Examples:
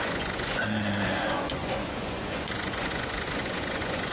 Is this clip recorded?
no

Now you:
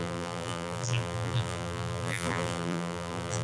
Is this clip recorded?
no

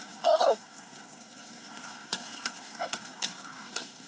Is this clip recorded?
no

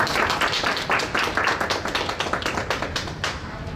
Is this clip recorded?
yes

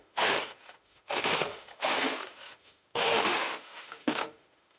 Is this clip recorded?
no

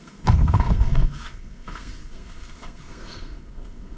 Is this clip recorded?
no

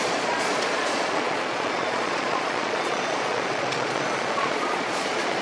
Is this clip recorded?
no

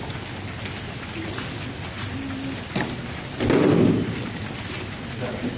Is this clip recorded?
yes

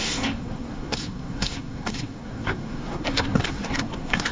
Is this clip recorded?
no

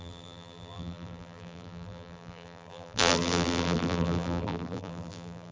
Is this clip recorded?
no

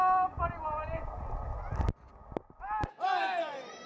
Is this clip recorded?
yes